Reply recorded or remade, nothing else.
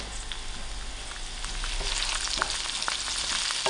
recorded